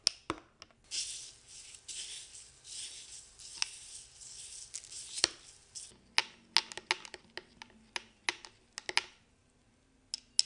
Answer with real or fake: real